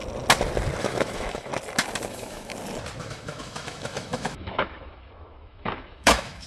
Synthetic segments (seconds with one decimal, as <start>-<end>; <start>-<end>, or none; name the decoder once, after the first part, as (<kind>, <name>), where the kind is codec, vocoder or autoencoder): 0.8-1.5 (autoencoder, DAC-VAE); 2.1-2.5; 3.0-6.5